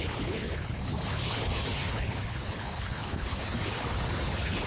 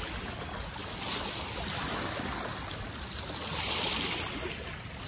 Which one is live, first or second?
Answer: second